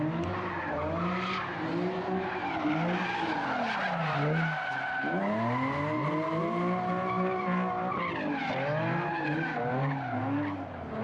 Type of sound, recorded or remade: recorded